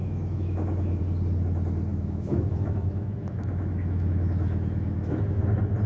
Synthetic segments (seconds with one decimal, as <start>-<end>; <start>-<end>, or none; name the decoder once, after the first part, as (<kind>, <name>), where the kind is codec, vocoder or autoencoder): 0.0-1.0 (autoencoder, DAC-VAE); 1.9-5.4